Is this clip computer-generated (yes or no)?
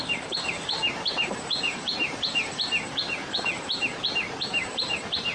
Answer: yes